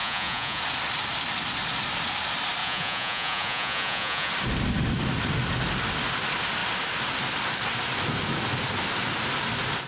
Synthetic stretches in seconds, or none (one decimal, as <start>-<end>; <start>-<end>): 0.0-0.6; 2.6-4.3